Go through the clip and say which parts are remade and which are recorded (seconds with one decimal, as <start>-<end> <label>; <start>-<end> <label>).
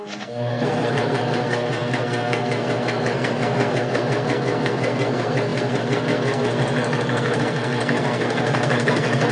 0.0-9.3 remade